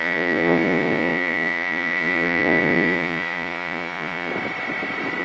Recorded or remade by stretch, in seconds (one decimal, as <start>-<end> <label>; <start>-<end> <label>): 0.0-4.3 remade; 4.3-5.2 recorded